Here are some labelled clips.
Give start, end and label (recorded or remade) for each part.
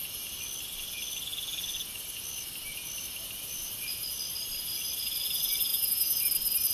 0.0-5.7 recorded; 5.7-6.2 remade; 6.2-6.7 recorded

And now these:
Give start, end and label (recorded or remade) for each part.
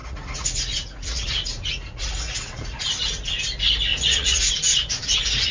0.0-2.8 remade; 2.8-3.9 recorded; 3.9-4.5 remade; 4.5-5.5 recorded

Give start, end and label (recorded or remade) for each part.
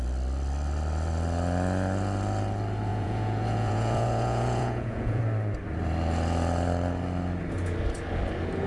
0.0-2.9 recorded; 2.9-5.2 remade; 5.2-8.7 recorded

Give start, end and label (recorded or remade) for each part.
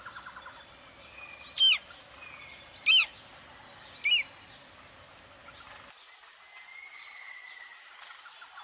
0.0-8.6 recorded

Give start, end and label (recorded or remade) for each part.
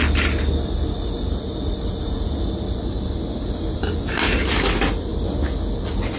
0.0-6.2 recorded